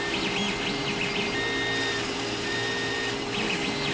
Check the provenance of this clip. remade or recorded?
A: recorded